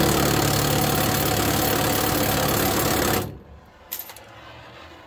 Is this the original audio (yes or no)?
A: yes